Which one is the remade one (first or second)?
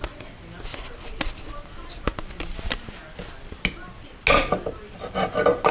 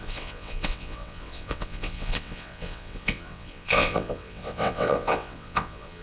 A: second